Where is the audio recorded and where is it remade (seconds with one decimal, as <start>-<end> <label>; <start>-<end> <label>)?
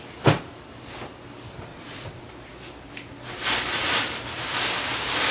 0.0-1.7 recorded; 1.7-2.2 remade; 2.2-5.3 recorded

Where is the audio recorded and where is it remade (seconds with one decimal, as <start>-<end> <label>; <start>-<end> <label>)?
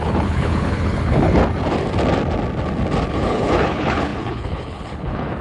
0.0-1.4 remade; 1.4-3.1 recorded; 3.1-5.4 remade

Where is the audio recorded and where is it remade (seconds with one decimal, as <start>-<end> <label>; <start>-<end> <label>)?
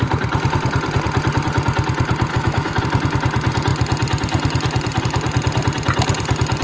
0.0-2.3 recorded; 2.3-2.8 remade; 2.8-6.6 recorded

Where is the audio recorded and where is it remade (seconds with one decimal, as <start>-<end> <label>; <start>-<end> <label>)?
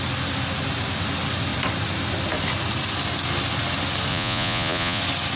0.0-4.1 recorded; 4.1-5.0 remade; 5.0-5.4 recorded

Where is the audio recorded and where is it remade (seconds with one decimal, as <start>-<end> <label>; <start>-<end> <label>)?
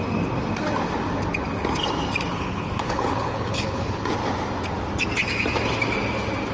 0.0-2.3 recorded; 2.3-4.0 remade; 4.0-6.5 recorded